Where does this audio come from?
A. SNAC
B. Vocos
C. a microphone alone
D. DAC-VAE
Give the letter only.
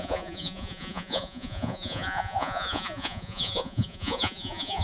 B